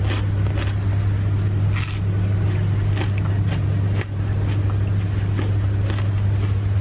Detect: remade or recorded recorded